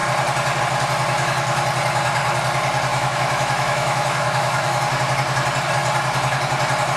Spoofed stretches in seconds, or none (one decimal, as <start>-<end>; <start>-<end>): 2.9-4.8